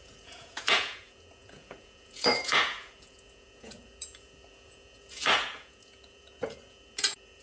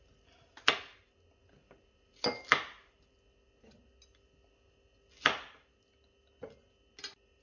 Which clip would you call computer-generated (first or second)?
first